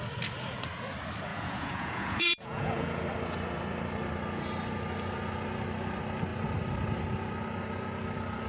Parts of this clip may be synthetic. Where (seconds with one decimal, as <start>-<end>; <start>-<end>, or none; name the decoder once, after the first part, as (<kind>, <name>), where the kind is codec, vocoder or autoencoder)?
1.3-3.0 (vocoder, Vocos)